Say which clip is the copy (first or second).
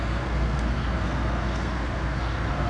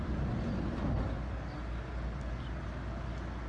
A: first